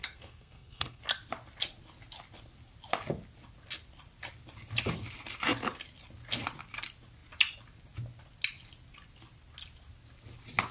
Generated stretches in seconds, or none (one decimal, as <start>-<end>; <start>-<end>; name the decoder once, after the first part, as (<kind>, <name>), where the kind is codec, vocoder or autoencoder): 0.0-1.0 (codec, SNAC)